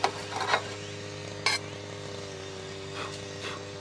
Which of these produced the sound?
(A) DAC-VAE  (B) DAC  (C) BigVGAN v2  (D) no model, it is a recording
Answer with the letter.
D